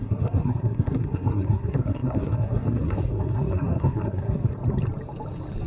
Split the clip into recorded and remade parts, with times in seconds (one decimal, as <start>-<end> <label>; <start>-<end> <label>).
0.0-4.5 remade; 4.5-5.7 recorded